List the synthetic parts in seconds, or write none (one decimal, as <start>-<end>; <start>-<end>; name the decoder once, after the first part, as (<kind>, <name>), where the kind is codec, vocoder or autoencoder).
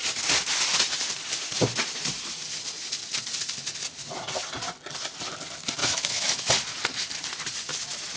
5.8-6.5 (autoencoder, DAC-VAE)